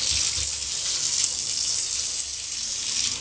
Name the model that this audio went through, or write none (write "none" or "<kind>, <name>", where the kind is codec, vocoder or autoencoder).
none